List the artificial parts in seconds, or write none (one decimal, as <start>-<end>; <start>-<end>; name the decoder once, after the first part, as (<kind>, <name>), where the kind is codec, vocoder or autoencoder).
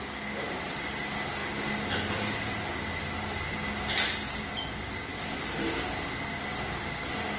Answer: none